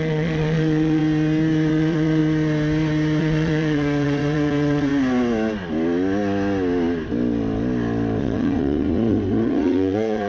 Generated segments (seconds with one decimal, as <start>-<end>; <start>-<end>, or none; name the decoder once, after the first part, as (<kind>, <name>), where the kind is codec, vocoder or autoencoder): 0.0-1.0 (vocoder, Vocos); 1.7-2.2; 3.2-4.9; 8.2-10.3